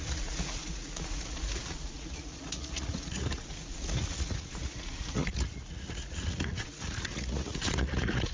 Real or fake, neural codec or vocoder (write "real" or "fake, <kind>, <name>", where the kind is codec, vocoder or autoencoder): fake, vocoder, Vocos